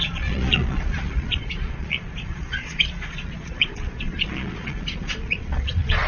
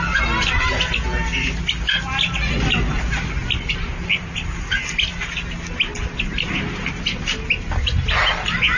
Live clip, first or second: second